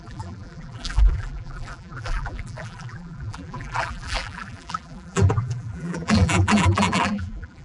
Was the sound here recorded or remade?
remade